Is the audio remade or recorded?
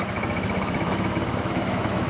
remade